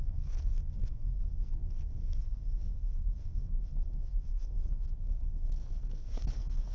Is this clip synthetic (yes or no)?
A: yes